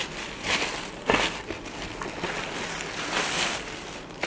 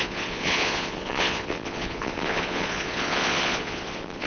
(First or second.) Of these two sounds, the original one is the first